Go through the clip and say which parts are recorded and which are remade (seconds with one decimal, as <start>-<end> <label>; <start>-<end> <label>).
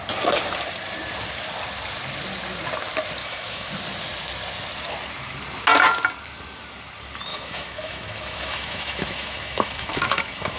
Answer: 0.0-3.2 recorded; 3.2-3.7 remade; 3.7-7.3 recorded; 7.3-10.6 remade